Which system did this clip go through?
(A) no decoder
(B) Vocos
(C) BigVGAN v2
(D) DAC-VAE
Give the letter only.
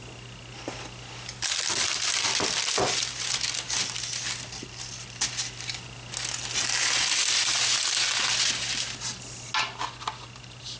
A